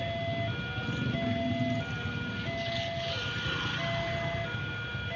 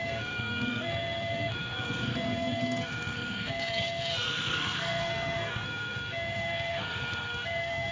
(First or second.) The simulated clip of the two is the second